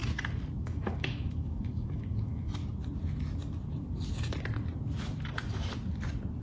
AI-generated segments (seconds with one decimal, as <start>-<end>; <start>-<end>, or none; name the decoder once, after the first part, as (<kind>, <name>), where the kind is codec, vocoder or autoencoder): 0.6-2.6 (autoencoder, DAC-VAE)